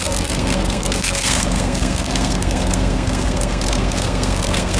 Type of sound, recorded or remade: remade